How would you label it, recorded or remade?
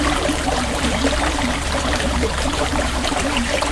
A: remade